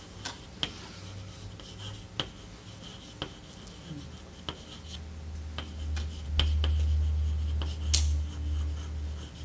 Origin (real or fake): real